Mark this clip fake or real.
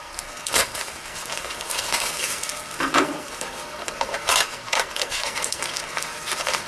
fake